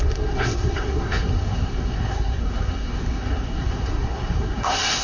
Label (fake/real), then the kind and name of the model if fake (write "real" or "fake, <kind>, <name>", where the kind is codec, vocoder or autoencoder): fake, codec, SNAC